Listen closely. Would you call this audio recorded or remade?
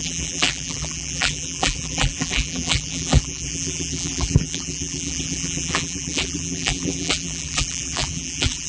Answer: remade